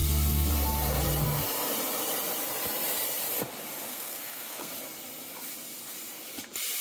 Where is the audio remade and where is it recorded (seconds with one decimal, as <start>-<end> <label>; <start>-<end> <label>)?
0.0-3.9 recorded; 3.9-4.7 remade; 4.7-6.8 recorded